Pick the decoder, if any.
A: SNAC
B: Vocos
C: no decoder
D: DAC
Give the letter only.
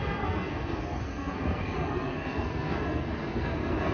A